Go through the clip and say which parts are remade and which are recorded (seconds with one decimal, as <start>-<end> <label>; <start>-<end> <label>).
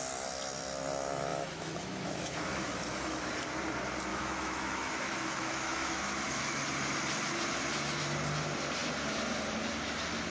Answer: 0.0-1.3 recorded; 1.3-3.3 remade; 3.3-4.1 recorded; 4.1-6.6 remade; 6.6-10.3 recorded